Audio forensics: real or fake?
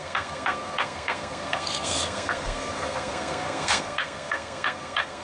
fake